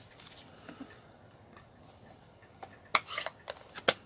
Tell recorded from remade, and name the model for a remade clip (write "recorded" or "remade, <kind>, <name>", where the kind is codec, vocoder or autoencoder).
recorded